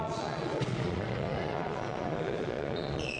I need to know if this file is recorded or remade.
remade